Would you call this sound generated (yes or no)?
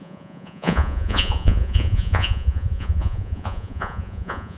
yes